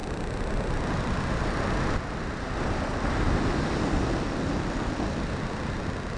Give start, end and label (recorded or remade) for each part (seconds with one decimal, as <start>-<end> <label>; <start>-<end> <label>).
0.0-6.2 recorded